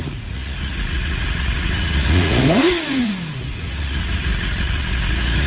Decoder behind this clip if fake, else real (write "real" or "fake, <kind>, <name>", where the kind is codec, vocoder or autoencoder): fake, vocoder, Vocos